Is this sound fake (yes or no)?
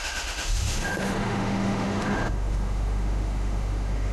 yes